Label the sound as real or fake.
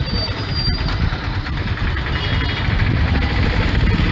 real